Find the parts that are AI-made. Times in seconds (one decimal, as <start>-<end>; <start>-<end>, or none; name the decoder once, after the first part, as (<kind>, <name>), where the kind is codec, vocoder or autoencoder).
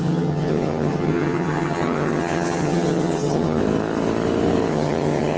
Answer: 0.0-3.6 (vocoder, HiFi-GAN); 4.7-5.4